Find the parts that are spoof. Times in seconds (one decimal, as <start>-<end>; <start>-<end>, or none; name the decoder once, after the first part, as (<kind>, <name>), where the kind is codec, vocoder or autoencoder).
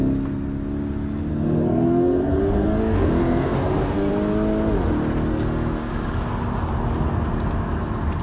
1.3-4.1 (codec, SNAC); 5.3-5.9